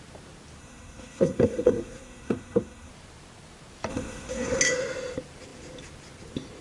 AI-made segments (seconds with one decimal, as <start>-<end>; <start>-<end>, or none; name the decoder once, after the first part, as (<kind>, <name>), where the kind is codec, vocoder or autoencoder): 0.6-2.9 (codec, SNAC); 3.9-4.6